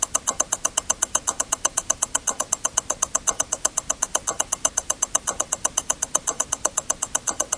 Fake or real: real